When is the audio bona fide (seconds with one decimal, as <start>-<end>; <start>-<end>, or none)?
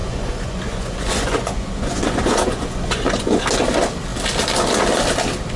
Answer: 3.4-5.6